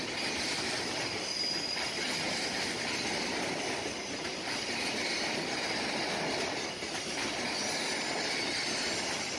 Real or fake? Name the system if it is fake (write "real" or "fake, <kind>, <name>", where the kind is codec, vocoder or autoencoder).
real